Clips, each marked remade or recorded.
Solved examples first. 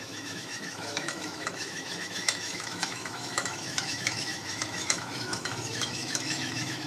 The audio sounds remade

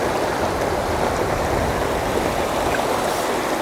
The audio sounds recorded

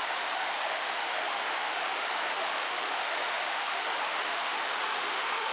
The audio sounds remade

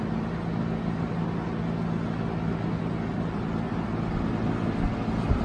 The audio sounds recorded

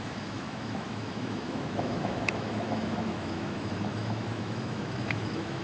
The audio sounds remade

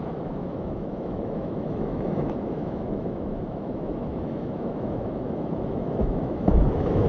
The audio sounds remade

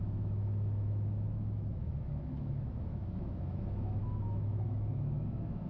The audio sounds remade